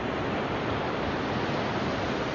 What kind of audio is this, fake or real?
real